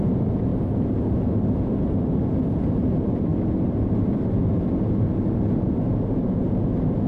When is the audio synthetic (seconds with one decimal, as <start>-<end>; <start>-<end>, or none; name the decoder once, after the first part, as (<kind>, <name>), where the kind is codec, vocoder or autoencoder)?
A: 0.5-1.1 (vocoder, BigVGAN v2)